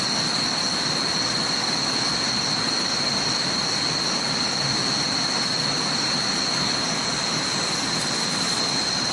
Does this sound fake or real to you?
real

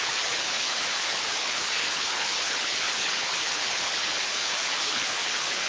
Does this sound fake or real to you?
fake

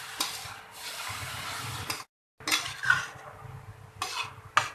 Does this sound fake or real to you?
real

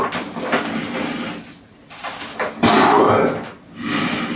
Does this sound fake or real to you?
real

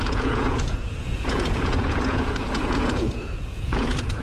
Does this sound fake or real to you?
fake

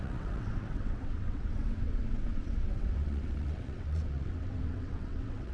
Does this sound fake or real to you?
fake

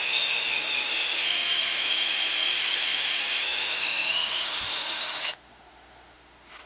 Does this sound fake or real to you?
fake